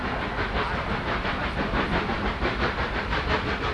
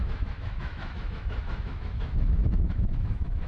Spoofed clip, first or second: second